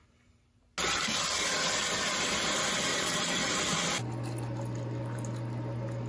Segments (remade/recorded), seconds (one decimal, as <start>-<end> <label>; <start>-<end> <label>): 0.0-2.9 recorded; 2.9-3.5 remade; 3.5-6.1 recorded